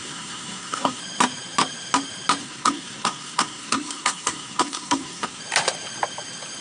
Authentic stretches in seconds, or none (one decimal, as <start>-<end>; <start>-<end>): 1.0-2.4; 5.4-6.6